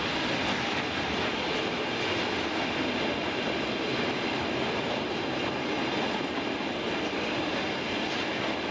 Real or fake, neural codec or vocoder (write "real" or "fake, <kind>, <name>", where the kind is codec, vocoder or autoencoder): real